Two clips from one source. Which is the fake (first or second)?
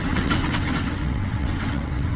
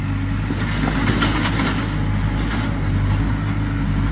first